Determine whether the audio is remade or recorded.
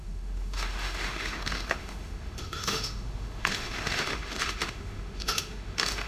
remade